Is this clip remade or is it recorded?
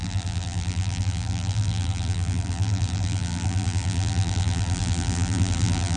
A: remade